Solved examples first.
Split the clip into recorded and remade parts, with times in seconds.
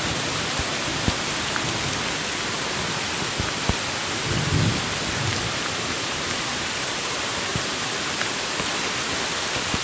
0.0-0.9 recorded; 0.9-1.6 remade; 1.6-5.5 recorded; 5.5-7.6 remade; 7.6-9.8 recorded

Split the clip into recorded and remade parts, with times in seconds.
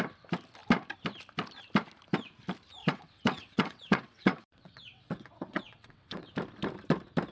0.0-2.8 recorded; 2.8-6.3 remade; 6.3-7.3 recorded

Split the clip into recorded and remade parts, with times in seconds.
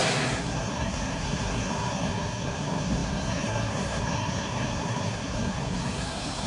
0.0-6.5 remade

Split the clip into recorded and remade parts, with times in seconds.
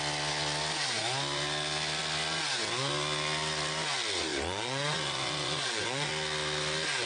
0.0-4.3 recorded; 4.3-6.1 remade; 6.1-7.1 recorded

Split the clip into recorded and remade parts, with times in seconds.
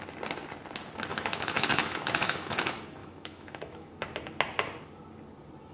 0.0-1.1 recorded; 1.1-2.6 remade; 2.6-3.0 recorded; 3.0-3.9 remade; 3.9-5.7 recorded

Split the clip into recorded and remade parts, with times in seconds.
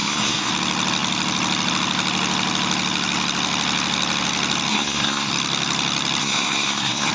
0.0-0.5 remade; 0.5-4.7 recorded; 4.7-5.3 remade; 5.3-6.2 recorded; 6.2-7.1 remade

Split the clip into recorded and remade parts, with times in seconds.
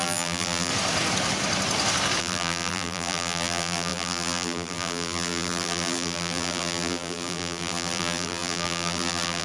0.0-0.7 remade; 0.7-2.2 recorded; 2.2-9.4 remade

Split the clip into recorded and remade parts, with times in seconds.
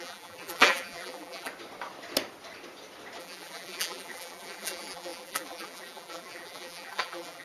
0.0-1.5 remade; 1.5-3.2 recorded; 3.2-7.4 remade